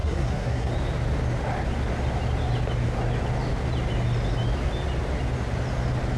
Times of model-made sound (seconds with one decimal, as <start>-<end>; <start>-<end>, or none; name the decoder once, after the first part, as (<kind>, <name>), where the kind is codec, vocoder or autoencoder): 0.0-0.7 (codec, SNAC)